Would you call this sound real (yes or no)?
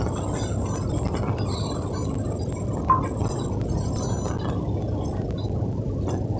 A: yes